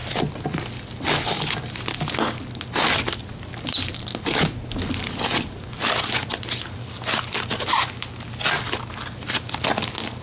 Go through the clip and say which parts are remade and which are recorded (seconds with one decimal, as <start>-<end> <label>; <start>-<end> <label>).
0.0-10.2 recorded